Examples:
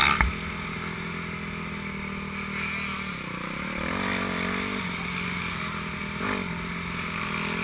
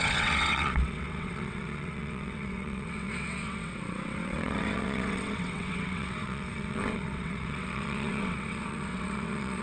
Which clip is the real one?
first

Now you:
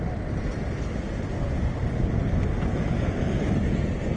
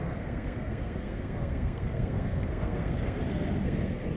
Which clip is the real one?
first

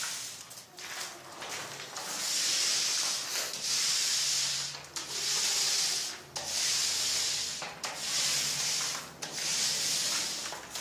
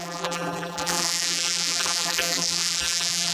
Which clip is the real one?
first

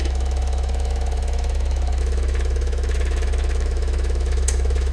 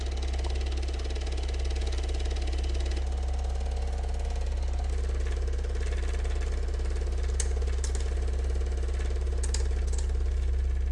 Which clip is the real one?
second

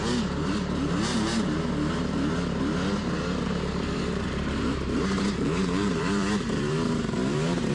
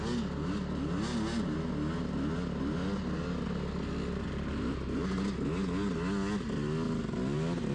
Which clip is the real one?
second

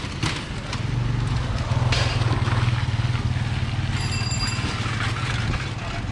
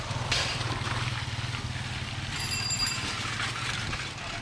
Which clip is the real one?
first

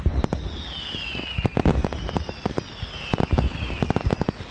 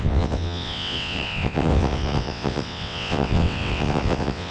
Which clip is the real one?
first